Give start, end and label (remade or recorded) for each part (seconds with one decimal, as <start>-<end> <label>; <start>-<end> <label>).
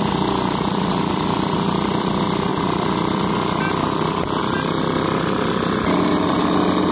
0.0-6.9 recorded